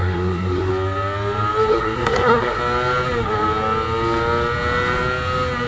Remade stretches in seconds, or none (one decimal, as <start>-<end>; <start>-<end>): 0.0-0.7; 1.7-2.6

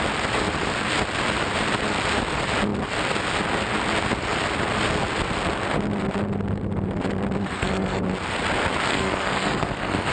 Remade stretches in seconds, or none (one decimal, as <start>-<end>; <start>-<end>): 7.4-8.0; 8.9-10.1

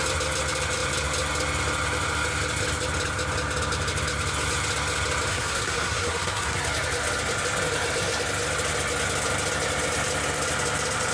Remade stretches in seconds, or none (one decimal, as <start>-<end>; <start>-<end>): 5.3-6.6

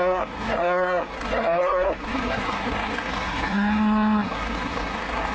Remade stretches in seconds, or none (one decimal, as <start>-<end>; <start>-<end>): 0.0-5.3

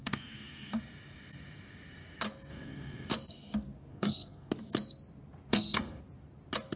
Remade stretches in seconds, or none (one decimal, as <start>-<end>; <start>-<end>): 0.0-0.7; 2.5-3.1; 3.9-4.5; 5.5-6.0